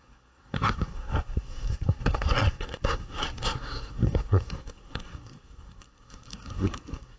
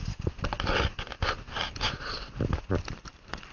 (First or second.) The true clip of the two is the second